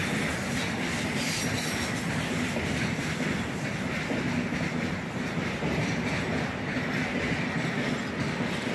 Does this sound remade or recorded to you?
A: recorded